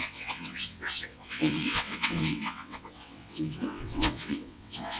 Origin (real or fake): fake